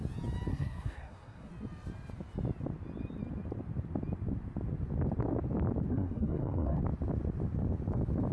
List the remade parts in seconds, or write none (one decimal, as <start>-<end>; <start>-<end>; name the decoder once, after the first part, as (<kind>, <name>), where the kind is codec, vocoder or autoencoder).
0.5-1.5 (codec, SNAC); 5.9-6.8